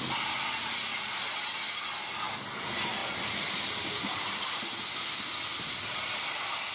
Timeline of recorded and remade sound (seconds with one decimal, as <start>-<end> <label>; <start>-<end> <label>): 0.0-6.7 recorded